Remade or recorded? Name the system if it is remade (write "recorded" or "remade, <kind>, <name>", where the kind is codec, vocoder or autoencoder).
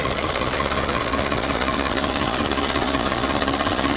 remade, vocoder, Vocos